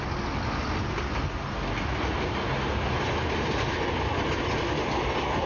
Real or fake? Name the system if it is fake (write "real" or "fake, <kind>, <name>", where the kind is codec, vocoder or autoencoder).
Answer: real